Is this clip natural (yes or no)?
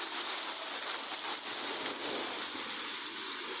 yes